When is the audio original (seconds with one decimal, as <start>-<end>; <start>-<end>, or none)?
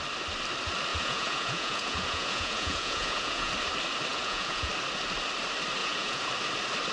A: 0.0-0.9; 3.5-4.1; 4.7-5.8; 6.3-6.9